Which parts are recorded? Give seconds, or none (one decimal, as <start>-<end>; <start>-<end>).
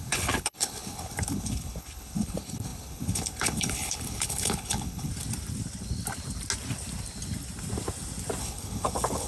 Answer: 5.1-8.4